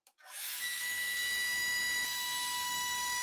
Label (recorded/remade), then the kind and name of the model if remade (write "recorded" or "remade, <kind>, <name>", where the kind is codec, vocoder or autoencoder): remade, autoencoder, DAC-VAE